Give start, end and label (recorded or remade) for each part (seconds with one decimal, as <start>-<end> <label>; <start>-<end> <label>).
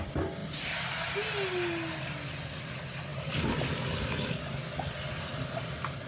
0.0-6.1 recorded